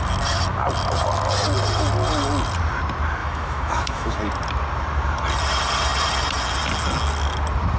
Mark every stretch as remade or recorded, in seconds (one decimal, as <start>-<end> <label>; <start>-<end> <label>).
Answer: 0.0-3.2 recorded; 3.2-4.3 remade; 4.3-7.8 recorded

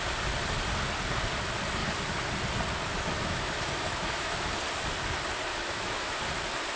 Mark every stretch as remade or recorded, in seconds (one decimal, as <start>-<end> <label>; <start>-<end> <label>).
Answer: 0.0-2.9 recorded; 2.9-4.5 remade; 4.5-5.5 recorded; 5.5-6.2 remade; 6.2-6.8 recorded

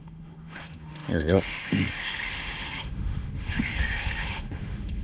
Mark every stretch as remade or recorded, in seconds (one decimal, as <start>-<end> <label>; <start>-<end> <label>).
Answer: 0.0-5.0 remade

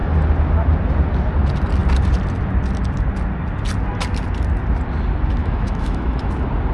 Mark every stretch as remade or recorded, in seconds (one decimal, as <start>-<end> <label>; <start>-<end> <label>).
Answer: 0.0-5.4 recorded; 5.4-6.3 remade; 6.3-6.7 recorded

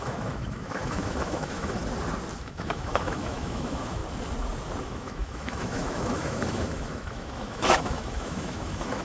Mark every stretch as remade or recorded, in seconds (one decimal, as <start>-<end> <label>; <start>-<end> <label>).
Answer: 0.0-1.8 remade; 1.8-2.4 recorded; 2.4-4.0 remade; 4.0-4.8 recorded; 4.8-9.0 remade